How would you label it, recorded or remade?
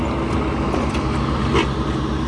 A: recorded